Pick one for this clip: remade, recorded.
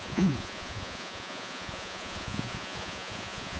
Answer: remade